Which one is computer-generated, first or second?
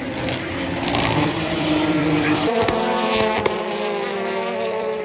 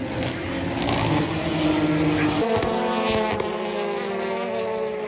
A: first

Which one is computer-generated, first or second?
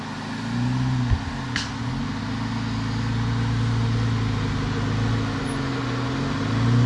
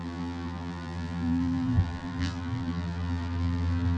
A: second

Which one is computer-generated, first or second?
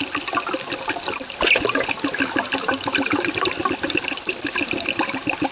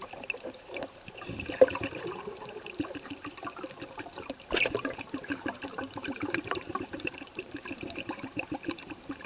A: second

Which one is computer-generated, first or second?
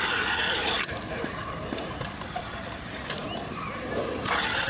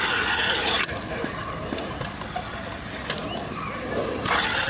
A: first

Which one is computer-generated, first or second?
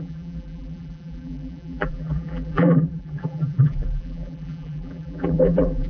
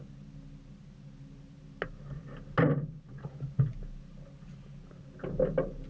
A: first